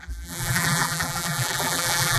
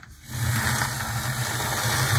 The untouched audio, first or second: second